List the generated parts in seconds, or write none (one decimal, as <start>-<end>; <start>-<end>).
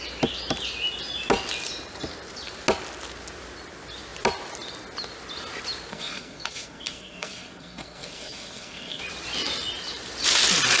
5.9-9.0